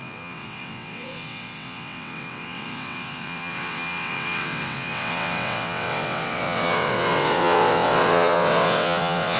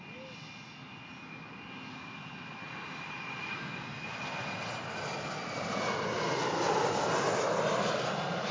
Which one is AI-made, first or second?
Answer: first